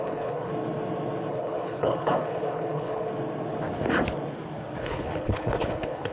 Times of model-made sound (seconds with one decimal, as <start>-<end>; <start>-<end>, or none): 0.0-0.5; 1.3-3.1; 4.8-6.1